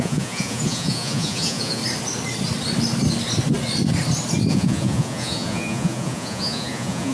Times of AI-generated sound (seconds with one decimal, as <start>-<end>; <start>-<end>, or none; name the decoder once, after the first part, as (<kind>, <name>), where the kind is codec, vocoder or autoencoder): 0.0-1.8 (vocoder, Vocos); 4.5-7.1